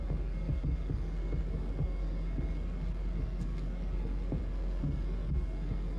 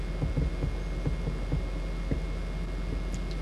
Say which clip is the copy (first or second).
first